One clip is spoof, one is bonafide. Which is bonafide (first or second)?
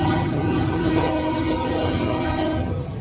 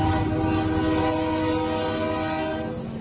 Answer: second